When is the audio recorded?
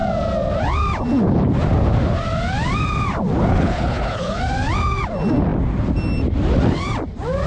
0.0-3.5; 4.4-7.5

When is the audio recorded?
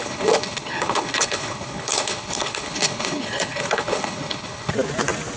4.7-5.4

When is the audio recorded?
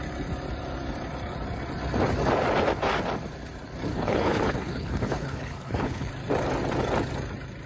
0.0-3.9; 6.1-7.7